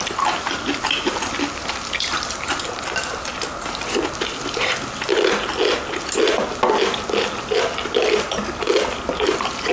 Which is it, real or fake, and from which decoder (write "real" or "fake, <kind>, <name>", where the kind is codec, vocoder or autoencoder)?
real